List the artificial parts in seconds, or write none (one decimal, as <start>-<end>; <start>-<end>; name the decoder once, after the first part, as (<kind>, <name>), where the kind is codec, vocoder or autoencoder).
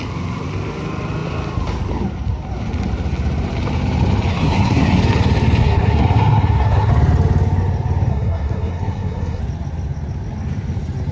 4.3-5.0 (codec, SNAC); 5.6-6.9; 8.1-9.4